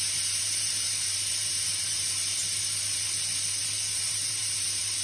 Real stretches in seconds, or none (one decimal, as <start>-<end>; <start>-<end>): 2.4-3.6

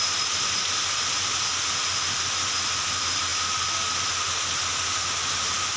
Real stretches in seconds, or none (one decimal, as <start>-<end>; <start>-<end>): 0.0-5.8

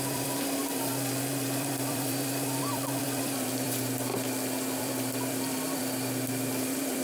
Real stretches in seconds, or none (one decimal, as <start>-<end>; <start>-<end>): 4.1-4.8; 5.8-6.6

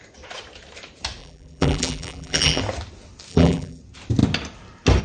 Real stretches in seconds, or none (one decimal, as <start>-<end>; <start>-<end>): 0.0-1.2; 2.6-3.3; 3.8-5.0

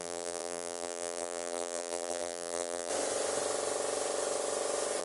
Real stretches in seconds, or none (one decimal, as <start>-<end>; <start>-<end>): 2.9-5.0